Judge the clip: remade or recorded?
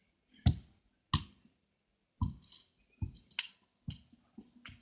recorded